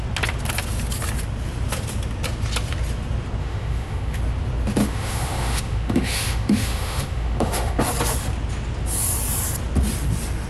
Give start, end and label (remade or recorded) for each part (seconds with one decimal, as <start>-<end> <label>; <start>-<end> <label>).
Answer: 0.0-3.4 recorded; 3.4-4.2 remade; 4.2-4.8 recorded; 4.8-7.8 remade; 7.8-10.5 recorded